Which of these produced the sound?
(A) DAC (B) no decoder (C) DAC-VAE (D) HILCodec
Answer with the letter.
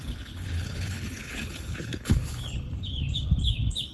D